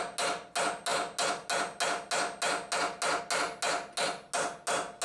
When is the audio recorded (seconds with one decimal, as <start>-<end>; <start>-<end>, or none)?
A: 0.0-5.0